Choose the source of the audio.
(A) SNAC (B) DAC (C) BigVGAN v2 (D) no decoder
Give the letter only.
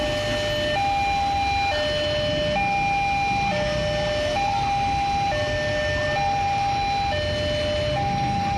D